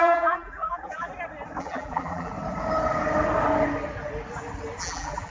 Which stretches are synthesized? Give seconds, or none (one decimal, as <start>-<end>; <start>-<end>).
0.0-1.1; 1.6-2.3; 4.8-5.3